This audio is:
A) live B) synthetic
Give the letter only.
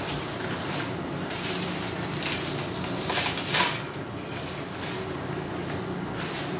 A